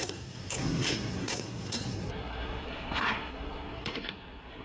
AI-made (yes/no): yes